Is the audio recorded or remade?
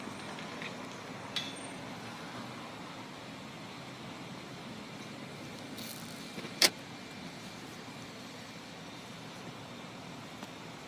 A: recorded